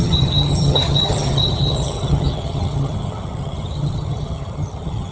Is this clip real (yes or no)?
no